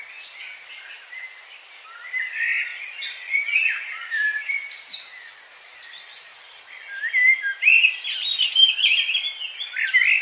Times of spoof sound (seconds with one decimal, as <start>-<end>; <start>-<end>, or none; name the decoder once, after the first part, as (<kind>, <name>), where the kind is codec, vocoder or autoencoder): 2.7-4.5 (vocoder, BigVGAN v2); 5.5-7.0